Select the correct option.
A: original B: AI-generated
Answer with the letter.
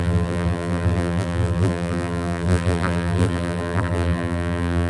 B